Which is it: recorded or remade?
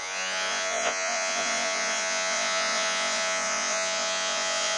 remade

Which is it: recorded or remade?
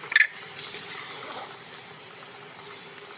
recorded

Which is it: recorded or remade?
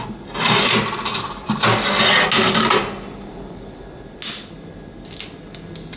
recorded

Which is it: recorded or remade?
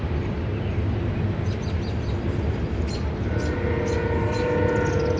recorded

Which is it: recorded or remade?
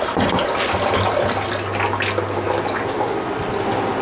recorded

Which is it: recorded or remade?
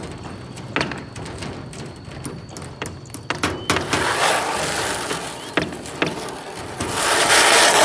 recorded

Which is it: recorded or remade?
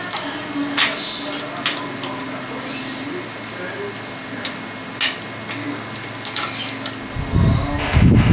recorded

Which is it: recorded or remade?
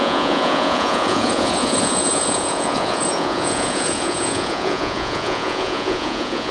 remade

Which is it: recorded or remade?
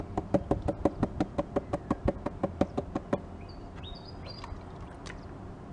recorded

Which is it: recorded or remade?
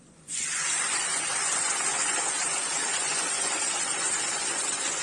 remade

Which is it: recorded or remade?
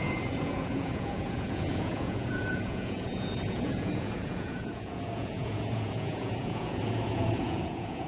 remade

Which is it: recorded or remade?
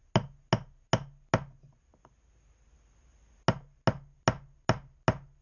recorded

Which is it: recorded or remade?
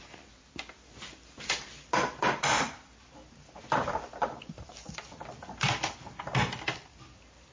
recorded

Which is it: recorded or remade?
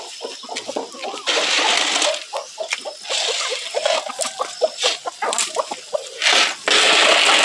recorded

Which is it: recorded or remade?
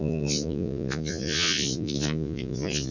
remade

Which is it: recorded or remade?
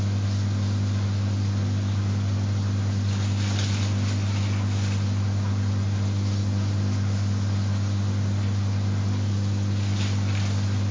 recorded